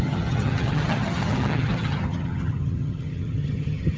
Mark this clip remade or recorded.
remade